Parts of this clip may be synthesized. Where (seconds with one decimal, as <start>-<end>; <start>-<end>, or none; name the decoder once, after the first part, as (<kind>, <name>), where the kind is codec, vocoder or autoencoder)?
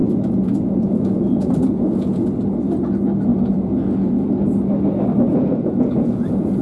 0.0-2.3 (vocoder, Vocos); 3.3-4.1; 5.3-6.6